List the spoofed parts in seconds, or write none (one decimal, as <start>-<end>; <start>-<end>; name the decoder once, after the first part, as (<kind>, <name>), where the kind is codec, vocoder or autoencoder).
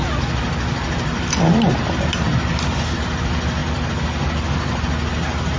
none